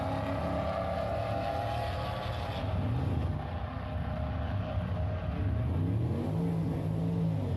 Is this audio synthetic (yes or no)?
no